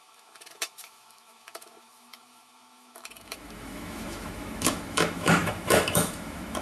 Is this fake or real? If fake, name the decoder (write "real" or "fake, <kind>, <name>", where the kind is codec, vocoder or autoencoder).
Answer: fake, autoencoder, DAC-VAE